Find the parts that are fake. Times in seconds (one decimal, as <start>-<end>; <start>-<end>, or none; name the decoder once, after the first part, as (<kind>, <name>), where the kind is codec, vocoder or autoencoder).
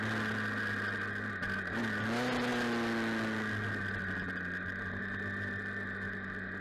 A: none